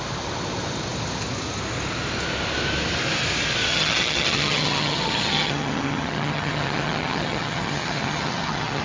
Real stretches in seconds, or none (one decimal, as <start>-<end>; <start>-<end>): 0.0-3.7